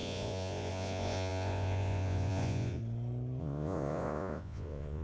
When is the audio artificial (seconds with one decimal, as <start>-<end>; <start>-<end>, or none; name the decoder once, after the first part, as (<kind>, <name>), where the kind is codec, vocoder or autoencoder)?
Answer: 0.0-2.8 (vocoder, Vocos); 3.4-5.0